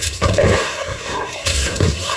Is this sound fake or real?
fake